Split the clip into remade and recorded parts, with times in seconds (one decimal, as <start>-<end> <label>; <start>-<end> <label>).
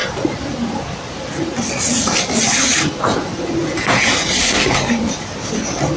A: 0.0-3.6 recorded; 3.6-4.1 remade; 4.1-6.0 recorded